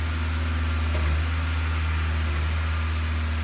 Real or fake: real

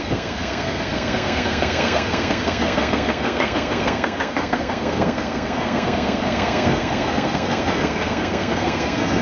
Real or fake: fake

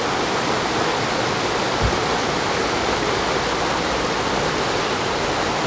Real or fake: real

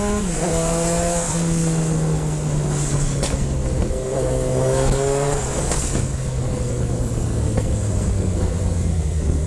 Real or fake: fake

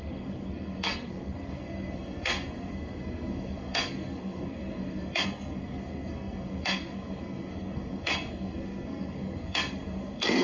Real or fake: fake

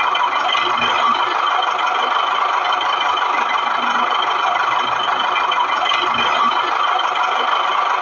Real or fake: real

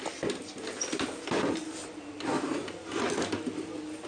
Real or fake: real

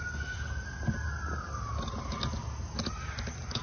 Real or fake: real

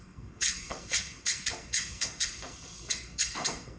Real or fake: fake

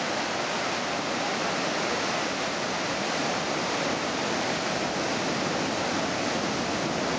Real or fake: real